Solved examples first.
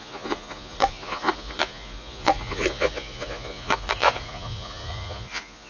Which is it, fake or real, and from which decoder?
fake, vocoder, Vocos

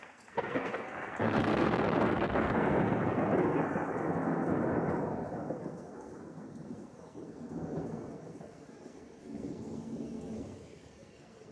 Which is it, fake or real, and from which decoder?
fake, codec, SNAC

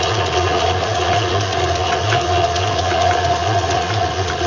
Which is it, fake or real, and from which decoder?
fake, vocoder, Vocos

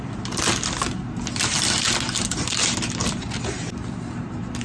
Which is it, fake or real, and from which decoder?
real